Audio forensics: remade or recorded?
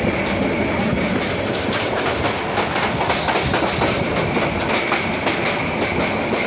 recorded